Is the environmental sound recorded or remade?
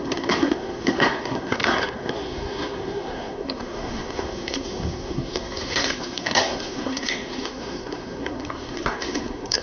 remade